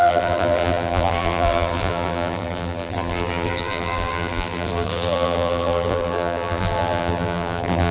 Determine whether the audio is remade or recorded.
remade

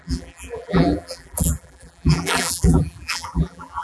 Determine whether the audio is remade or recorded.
remade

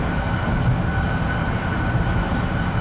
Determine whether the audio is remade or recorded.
recorded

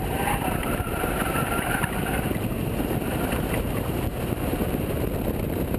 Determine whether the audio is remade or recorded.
remade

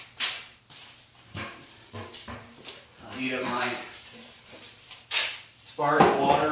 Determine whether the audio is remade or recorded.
remade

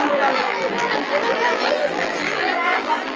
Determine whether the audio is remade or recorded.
remade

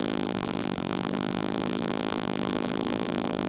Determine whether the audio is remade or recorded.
remade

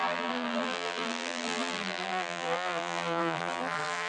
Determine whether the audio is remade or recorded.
remade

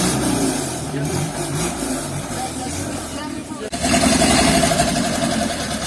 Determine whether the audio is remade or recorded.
remade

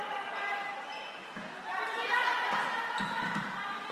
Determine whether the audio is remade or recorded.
remade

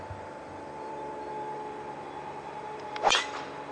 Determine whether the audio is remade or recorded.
remade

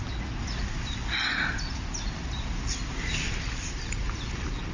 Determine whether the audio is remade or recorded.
recorded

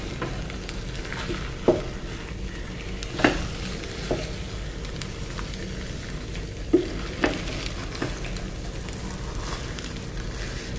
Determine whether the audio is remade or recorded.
recorded